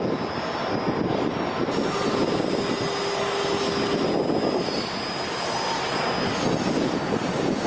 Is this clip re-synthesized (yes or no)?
no